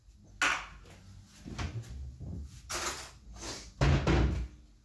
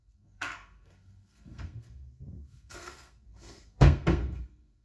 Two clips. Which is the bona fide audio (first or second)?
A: first